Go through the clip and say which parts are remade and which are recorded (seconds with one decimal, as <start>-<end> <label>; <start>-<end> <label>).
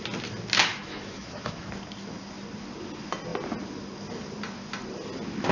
0.0-0.7 recorded; 0.7-1.7 remade; 1.7-5.5 recorded